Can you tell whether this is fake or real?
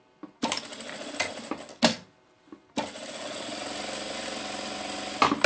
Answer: real